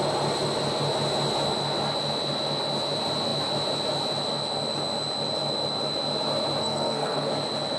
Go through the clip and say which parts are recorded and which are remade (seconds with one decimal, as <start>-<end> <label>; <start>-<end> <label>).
0.0-6.6 recorded; 6.6-7.3 remade; 7.3-7.8 recorded